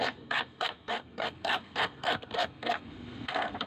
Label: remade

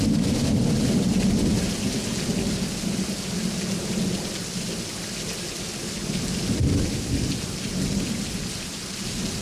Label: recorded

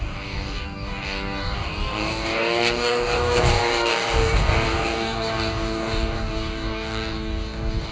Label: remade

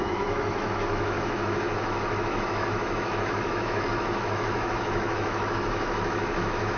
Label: remade